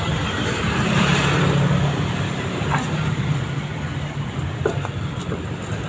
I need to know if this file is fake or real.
real